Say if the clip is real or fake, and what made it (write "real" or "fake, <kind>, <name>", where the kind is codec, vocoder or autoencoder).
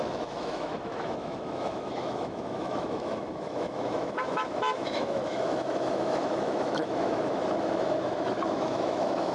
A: fake, autoencoder, DAC-VAE